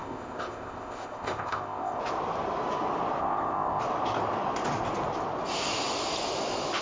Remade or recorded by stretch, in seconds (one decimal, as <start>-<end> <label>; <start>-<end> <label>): 0.0-2.0 remade; 2.0-3.2 recorded; 3.2-3.8 remade; 3.8-6.8 recorded

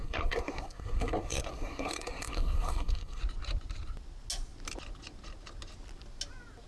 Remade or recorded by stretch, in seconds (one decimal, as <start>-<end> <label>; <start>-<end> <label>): 0.0-3.2 remade; 3.2-6.7 recorded

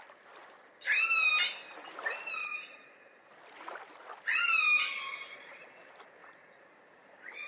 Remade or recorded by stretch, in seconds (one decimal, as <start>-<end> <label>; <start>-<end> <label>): 0.0-2.4 recorded; 2.4-3.3 remade; 3.3-6.2 recorded; 6.2-7.5 remade

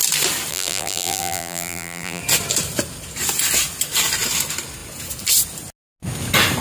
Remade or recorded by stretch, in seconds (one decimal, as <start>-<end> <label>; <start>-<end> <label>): 0.0-0.5 recorded; 0.5-2.2 remade; 2.2-6.6 recorded

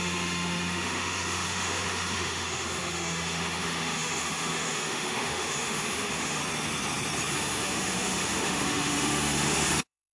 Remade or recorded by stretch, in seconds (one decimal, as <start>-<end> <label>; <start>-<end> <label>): 0.0-6.4 remade; 6.4-7.3 recorded; 7.3-10.1 remade

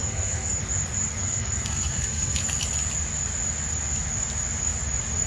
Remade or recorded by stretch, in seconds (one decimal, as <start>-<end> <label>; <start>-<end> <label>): 0.0-0.6 remade; 0.6-1.2 recorded; 1.2-2.6 remade; 2.6-5.3 recorded